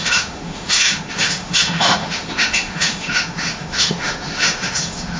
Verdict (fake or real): fake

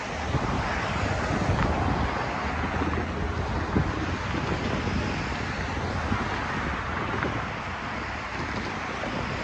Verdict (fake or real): real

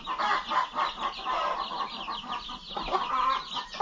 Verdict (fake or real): real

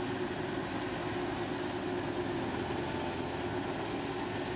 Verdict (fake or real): real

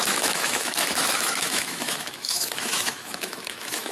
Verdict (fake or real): fake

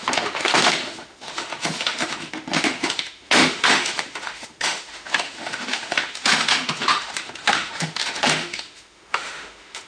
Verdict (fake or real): fake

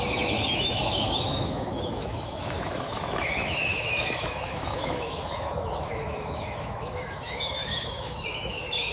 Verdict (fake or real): fake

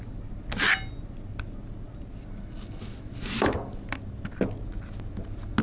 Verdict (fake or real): real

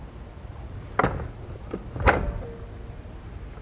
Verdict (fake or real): real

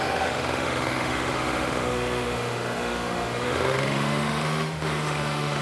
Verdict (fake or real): fake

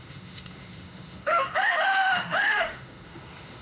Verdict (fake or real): fake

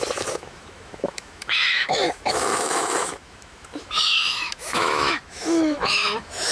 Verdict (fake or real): fake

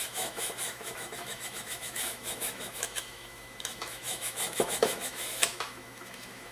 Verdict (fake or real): fake